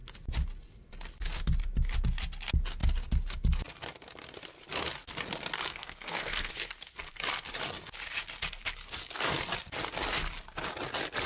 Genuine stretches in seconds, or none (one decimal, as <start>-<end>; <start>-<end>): 0.0-5.7; 6.5-11.3